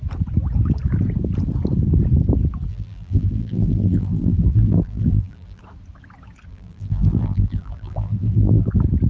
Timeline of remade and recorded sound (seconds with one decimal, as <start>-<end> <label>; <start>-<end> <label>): 0.0-2.7 recorded; 2.7-5.6 remade; 5.6-6.5 recorded; 6.5-8.7 remade; 8.7-9.1 recorded